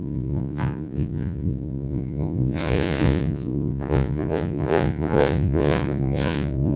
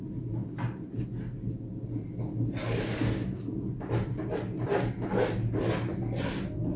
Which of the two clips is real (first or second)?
second